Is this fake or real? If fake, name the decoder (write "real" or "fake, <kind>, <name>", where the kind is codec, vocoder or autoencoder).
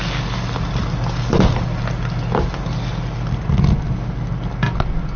real